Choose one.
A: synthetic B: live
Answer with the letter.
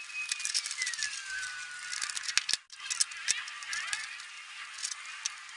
B